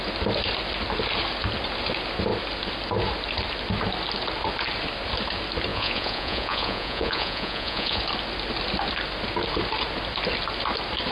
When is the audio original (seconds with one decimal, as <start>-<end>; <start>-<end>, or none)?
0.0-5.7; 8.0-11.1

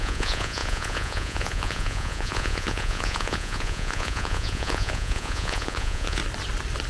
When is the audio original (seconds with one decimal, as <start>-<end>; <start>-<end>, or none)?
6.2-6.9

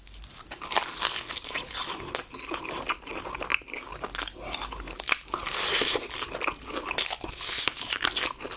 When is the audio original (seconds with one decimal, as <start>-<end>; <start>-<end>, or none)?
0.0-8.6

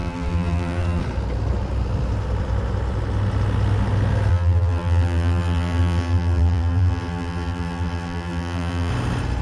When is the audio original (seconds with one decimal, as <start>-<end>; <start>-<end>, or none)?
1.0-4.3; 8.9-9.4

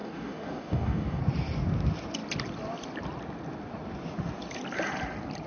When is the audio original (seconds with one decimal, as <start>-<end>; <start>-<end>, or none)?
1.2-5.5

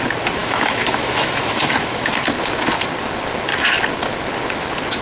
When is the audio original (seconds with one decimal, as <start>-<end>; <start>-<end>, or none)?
0.0-0.4; 2.1-5.0